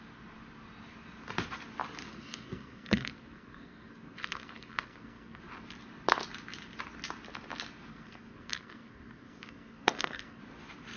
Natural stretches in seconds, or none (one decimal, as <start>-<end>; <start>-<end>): 0.0-2.1; 5.4-7.9; 10.4-11.0